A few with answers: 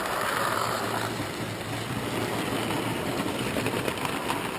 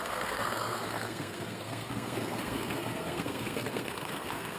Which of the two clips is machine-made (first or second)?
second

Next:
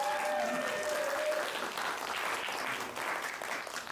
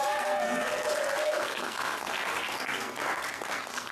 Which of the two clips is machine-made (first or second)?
second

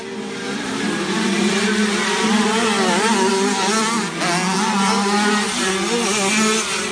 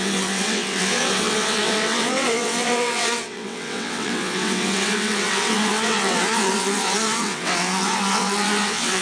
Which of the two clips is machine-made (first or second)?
second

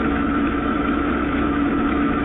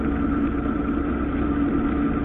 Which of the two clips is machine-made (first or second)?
first